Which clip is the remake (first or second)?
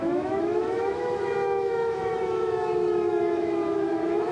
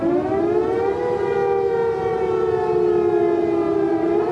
first